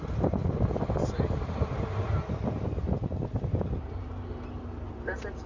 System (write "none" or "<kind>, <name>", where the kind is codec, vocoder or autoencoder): none